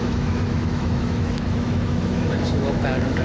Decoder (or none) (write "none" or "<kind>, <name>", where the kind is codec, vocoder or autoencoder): autoencoder, DAC-VAE